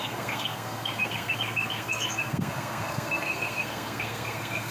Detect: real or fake fake